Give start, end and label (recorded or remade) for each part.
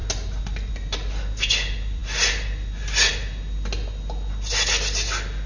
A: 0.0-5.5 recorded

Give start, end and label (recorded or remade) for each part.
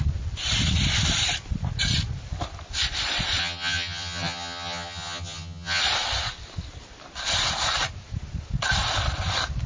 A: 0.0-3.4 recorded; 3.4-5.8 remade; 5.8-9.7 recorded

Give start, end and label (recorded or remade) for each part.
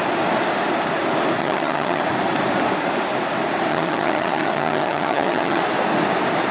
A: 0.0-1.4 recorded; 1.4-2.0 remade; 2.0-3.7 recorded; 3.7-5.6 remade; 5.6-6.5 recorded